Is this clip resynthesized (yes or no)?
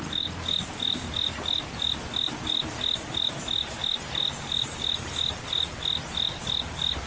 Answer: no